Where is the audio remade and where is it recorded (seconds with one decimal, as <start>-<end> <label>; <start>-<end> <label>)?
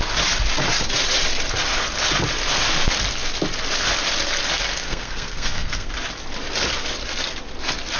0.0-4.8 recorded; 4.8-5.9 remade; 5.9-8.0 recorded